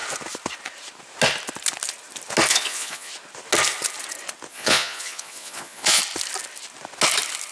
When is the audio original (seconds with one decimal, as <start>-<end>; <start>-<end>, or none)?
0.0-2.5; 3.1-4.5; 6.0-7.5